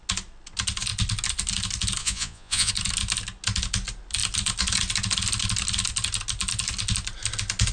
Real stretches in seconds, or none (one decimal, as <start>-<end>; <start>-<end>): 0.0-2.0; 2.7-7.7